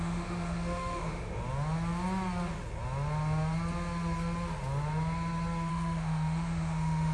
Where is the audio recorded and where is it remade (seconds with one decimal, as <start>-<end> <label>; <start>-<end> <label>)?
0.0-1.4 remade; 1.4-5.7 recorded; 5.7-7.1 remade

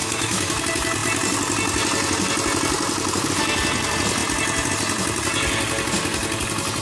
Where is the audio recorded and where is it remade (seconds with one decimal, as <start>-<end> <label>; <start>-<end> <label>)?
0.0-0.6 remade; 0.6-6.8 recorded

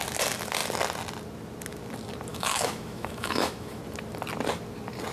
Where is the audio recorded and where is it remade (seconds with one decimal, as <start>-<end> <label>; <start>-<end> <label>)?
0.0-2.3 recorded; 2.3-3.8 remade; 3.8-5.1 recorded

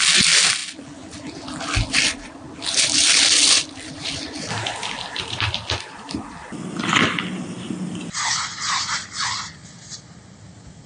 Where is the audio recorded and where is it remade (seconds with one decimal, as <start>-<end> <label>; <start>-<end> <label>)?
0.0-10.9 remade

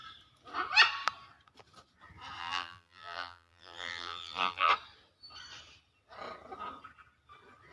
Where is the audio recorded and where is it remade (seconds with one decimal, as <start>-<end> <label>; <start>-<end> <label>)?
0.0-2.4 recorded; 2.4-4.7 remade; 4.7-7.7 recorded

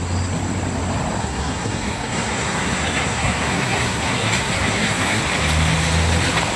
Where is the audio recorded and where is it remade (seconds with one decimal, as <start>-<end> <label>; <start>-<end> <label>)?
0.0-1.2 recorded; 1.2-5.2 remade; 5.2-6.6 recorded

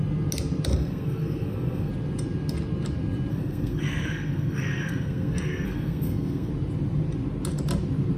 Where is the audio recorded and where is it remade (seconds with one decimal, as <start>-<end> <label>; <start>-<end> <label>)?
0.0-0.7 recorded; 0.7-1.9 remade; 1.9-3.3 recorded; 3.3-6.5 remade; 6.5-8.2 recorded

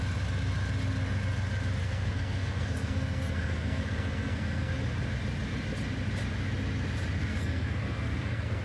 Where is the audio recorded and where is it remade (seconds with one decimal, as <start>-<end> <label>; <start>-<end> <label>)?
0.0-1.8 recorded; 1.8-4.7 remade; 4.7-7.2 recorded; 7.2-8.6 remade